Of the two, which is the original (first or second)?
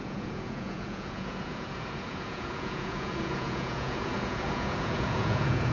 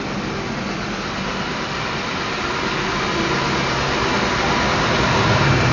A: second